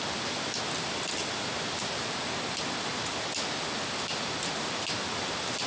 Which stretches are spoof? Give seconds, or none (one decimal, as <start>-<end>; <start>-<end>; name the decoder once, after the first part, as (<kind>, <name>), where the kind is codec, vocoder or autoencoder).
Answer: none